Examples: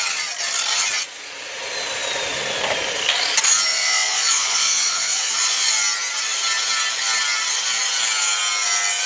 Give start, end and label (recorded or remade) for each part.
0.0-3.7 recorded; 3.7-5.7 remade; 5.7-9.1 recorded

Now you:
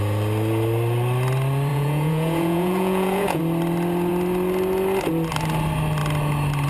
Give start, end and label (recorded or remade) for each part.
0.0-1.7 recorded; 1.7-3.4 remade; 3.4-6.7 recorded

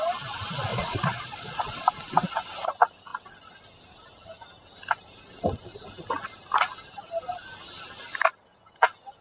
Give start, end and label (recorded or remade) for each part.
0.0-0.7 recorded; 0.7-1.9 remade; 1.9-9.2 recorded

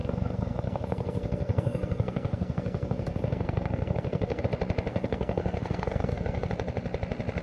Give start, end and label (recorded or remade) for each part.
0.0-4.4 remade; 4.4-4.9 recorded; 4.9-6.5 remade; 6.5-7.4 recorded

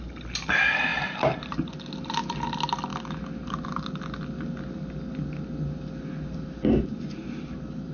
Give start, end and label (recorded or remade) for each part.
0.0-0.9 recorded; 0.9-1.7 remade; 1.7-7.9 recorded

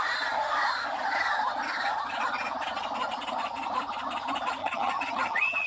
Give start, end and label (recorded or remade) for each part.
0.0-4.6 recorded; 4.6-5.7 remade

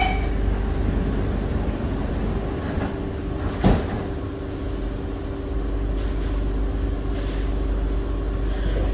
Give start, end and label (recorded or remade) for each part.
0.0-8.9 recorded